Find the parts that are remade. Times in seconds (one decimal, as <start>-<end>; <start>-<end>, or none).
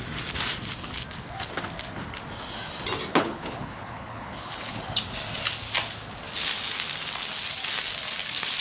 3.1-4.8